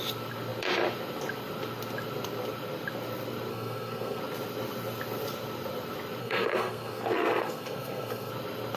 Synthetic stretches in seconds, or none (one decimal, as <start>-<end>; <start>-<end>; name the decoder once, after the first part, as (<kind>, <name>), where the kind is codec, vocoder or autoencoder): 3.5-4.2 (codec, SNAC); 6.2-8.3